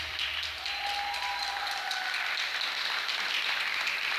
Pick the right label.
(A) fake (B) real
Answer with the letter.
B